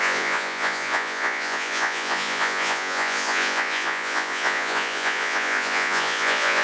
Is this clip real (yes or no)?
no